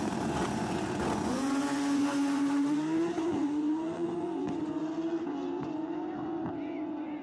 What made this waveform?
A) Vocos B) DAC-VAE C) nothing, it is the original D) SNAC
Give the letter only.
A